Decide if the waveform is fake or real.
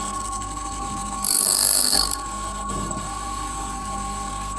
fake